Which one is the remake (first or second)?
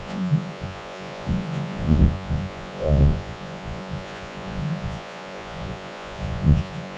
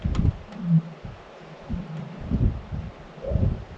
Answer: first